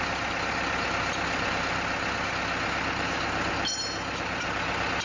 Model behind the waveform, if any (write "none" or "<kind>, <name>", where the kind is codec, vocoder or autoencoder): none